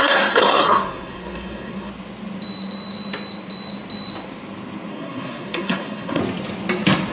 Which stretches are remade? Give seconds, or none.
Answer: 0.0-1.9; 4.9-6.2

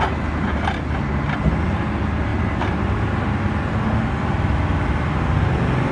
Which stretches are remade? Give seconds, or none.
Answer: none